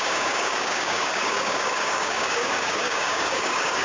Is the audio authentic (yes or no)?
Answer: no